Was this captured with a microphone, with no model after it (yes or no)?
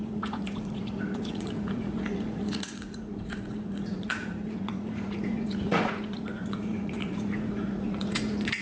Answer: no